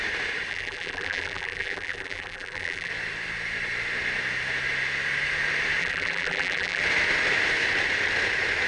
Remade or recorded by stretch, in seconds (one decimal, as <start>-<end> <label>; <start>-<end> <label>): 0.0-0.5 recorded; 0.5-2.9 remade; 2.9-5.8 recorded; 5.8-6.8 remade; 6.8-8.7 recorded